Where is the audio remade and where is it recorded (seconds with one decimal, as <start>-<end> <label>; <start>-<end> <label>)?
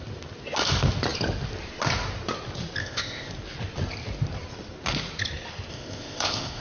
0.0-2.8 recorded; 2.8-3.3 remade; 3.3-5.7 recorded; 5.7-6.6 remade